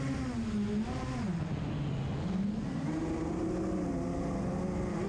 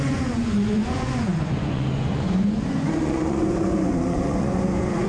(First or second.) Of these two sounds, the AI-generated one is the second